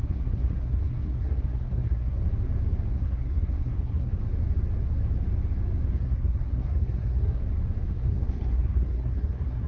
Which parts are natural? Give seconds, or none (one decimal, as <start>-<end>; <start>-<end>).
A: 2.2-2.9; 4.2-5.9; 7.4-7.9